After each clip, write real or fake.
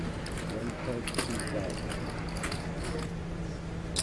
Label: real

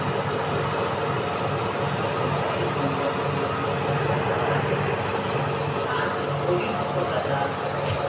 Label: real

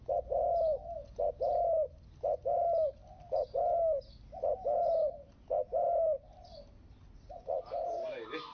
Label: real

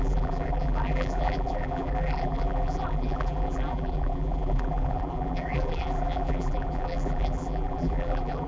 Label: fake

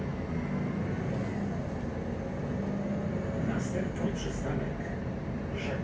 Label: real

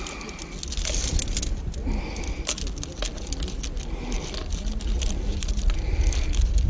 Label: real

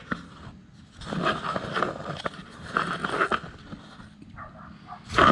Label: real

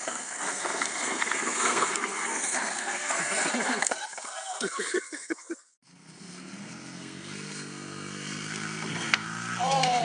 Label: fake